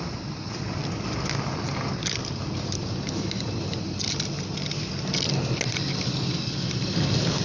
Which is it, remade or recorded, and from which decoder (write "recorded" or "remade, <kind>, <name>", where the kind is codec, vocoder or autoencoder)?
recorded